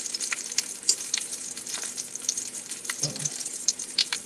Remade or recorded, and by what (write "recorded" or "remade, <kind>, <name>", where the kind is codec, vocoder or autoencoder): remade, vocoder, BigVGAN v2